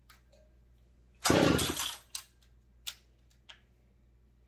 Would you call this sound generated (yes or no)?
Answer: no